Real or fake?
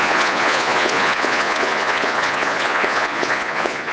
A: fake